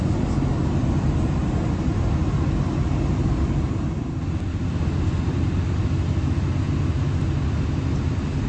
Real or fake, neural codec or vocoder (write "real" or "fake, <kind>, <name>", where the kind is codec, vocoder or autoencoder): real